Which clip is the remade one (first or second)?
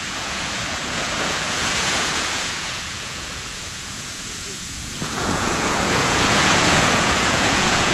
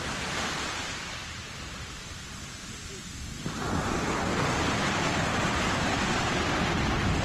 first